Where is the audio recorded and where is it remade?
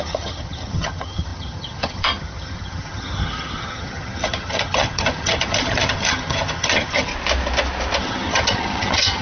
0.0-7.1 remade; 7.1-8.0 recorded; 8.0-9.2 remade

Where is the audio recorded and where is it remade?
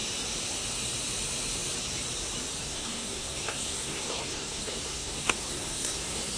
0.0-2.6 recorded; 2.6-6.4 remade